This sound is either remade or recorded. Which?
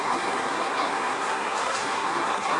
remade